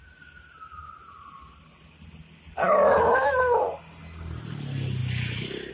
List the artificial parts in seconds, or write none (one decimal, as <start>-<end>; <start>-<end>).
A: none